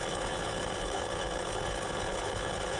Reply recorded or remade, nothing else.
remade